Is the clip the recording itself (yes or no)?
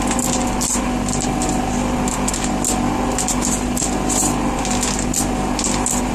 yes